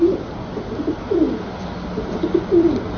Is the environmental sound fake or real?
real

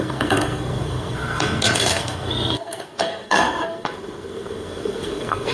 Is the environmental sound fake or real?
fake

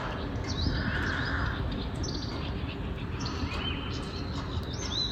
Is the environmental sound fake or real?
real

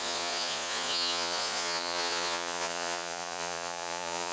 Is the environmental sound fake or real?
fake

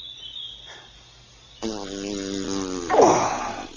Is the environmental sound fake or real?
real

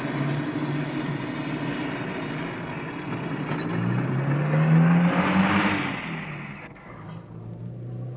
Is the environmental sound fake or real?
real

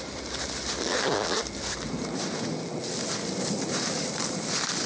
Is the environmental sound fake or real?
real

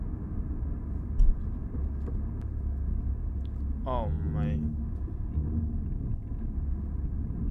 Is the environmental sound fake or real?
real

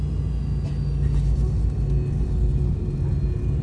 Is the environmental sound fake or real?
real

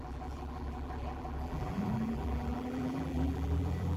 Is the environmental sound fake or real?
fake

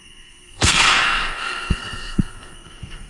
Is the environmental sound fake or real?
fake